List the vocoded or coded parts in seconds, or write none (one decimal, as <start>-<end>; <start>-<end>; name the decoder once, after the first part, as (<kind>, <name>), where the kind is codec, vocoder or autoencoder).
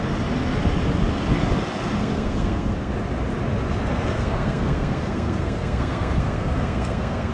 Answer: 2.0-2.9 (codec, SNAC); 4.1-7.3